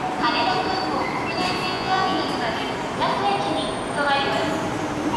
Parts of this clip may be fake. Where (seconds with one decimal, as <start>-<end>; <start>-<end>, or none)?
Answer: 1.7-2.2